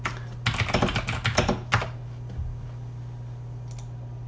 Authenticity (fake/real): real